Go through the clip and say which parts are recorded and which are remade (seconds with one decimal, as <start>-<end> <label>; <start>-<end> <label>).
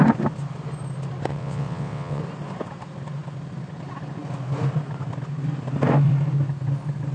0.0-1.3 recorded; 1.3-2.2 remade; 2.2-7.1 recorded